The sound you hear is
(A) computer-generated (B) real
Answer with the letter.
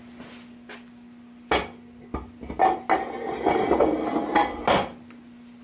B